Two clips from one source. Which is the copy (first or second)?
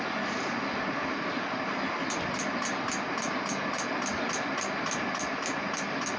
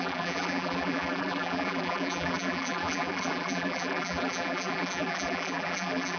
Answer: second